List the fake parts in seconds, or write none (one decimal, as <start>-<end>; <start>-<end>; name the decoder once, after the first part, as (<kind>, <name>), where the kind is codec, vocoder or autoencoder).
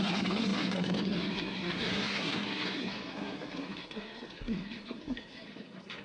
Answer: 0.0-6.0 (codec, SNAC)